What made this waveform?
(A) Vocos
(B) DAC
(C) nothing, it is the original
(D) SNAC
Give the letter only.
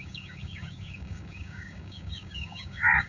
B